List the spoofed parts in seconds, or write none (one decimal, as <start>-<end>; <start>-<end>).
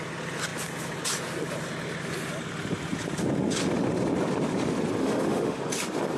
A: 5.0-5.6